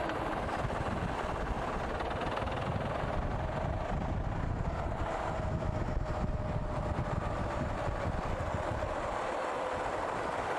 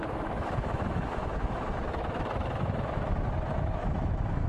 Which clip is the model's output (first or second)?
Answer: second